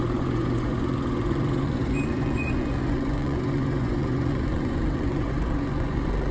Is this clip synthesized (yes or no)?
yes